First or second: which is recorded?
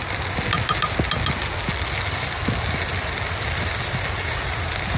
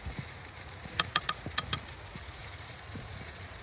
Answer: first